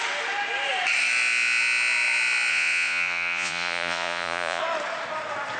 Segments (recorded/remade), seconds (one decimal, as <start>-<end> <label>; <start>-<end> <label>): 0.0-2.5 recorded; 2.5-4.6 remade; 4.6-5.6 recorded